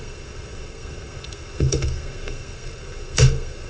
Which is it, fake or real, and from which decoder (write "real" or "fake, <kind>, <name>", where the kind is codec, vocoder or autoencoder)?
fake, codec, SNAC